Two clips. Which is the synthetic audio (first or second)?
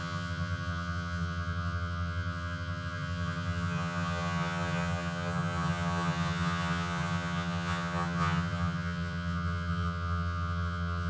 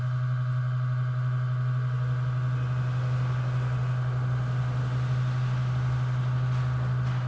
first